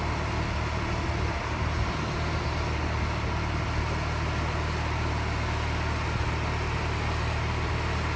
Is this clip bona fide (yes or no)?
yes